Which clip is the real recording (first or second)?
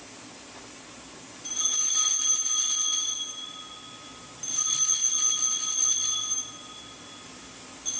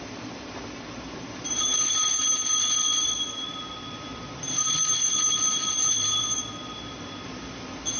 first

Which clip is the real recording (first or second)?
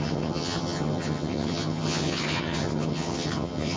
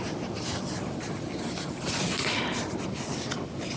second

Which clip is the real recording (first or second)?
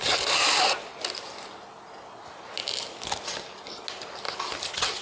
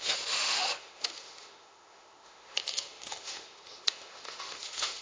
first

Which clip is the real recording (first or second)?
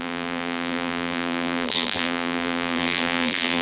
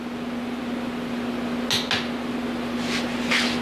second